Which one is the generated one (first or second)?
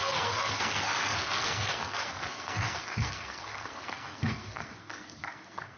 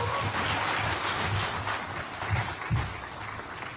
first